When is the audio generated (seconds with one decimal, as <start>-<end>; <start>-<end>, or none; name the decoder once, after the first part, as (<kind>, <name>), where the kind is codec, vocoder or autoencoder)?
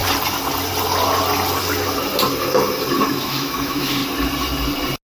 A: 3.1-4.0 (autoencoder, DAC-VAE)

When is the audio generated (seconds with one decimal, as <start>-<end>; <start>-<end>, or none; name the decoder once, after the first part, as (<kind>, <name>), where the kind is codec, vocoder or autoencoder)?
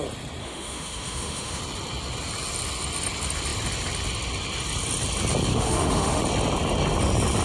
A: 0.4-1.6 (autoencoder, DAC-VAE); 5.5-6.2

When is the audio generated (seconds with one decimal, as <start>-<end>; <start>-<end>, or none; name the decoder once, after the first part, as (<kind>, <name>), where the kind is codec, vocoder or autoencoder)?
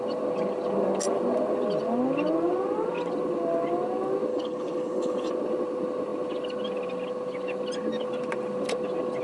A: 4.3-5.3 (codec, HILCodec)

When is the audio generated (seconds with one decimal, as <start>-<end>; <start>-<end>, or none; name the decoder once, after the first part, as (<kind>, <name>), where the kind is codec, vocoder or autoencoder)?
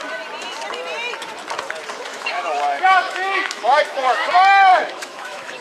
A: 2.1-4.3 (autoencoder, DAC-VAE); 4.7-5.6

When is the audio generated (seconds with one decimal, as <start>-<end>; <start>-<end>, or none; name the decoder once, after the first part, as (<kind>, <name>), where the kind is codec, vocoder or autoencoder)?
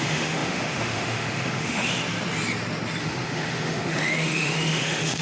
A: 0.0-2.0 (autoencoder, DAC-VAE); 3.0-5.2